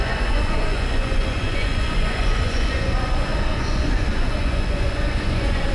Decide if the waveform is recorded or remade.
remade